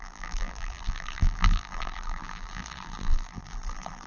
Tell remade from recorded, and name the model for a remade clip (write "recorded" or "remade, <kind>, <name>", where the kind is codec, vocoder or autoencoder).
remade, vocoder, BigVGAN v2